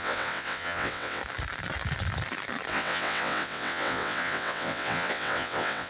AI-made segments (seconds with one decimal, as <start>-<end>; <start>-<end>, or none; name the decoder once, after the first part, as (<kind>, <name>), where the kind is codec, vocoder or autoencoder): 0.0-1.2 (vocoder, WaveNeXt); 2.7-5.9